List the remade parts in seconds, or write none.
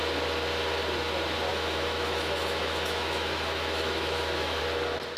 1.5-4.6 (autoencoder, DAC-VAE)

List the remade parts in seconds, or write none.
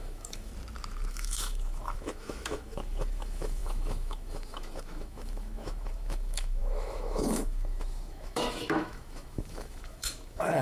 0.0-0.5 (autoencoder, DAC-VAE); 1.1-10.6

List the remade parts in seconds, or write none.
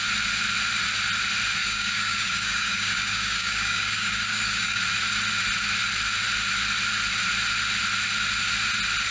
1.6-4.8 (codec, DAC)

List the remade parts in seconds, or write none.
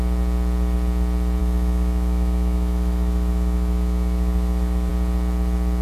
1.4-4.9 (autoencoder, DAC-VAE)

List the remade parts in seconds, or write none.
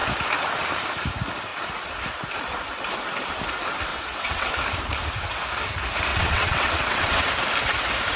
3.9-4.5 (vocoder, WaveNeXt); 6.1-7.3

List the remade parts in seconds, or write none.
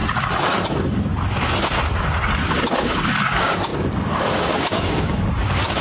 2.8-5.8 (codec, DAC)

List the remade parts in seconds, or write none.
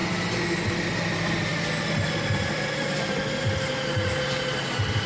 none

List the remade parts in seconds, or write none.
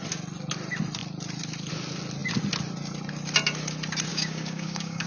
4.1-5.1 (codec, DAC)